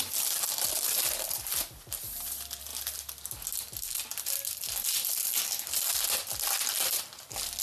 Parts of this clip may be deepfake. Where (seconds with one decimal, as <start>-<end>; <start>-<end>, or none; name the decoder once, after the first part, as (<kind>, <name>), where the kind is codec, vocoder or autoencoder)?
none